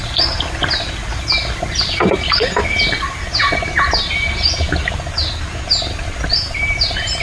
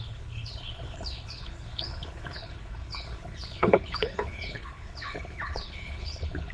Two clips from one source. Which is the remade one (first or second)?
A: second